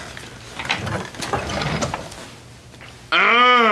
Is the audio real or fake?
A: real